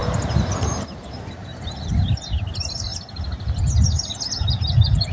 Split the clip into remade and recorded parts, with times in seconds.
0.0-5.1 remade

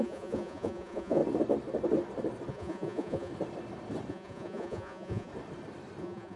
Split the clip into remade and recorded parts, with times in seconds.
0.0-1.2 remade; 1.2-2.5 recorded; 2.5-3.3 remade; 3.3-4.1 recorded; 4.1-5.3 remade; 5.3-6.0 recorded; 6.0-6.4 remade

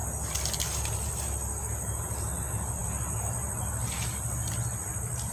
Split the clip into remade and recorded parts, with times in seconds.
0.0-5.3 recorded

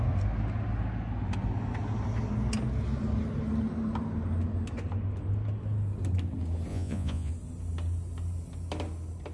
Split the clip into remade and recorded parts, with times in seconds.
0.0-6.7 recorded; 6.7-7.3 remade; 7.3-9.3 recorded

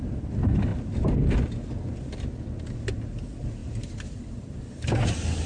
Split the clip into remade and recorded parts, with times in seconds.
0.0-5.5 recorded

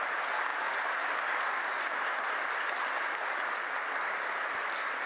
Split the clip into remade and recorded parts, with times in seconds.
0.0-5.1 recorded

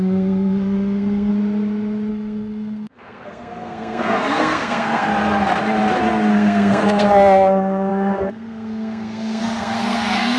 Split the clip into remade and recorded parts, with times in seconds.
0.0-1.3 remade; 1.3-2.1 recorded; 2.1-5.1 remade; 5.1-6.3 recorded; 6.3-10.4 remade